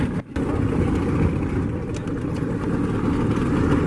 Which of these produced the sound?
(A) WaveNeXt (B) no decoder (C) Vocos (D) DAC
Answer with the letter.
B